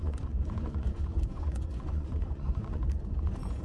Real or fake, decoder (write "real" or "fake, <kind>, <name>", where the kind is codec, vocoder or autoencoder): fake, vocoder, Vocos